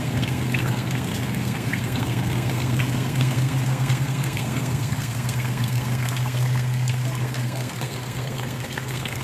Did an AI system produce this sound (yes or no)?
yes